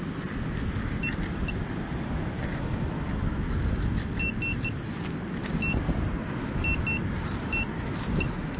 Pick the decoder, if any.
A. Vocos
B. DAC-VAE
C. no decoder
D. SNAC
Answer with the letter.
C